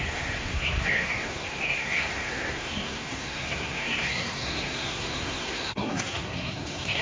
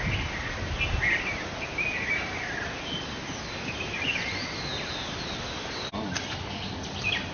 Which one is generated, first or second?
first